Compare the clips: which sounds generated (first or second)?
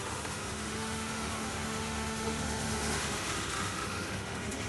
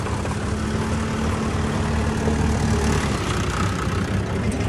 first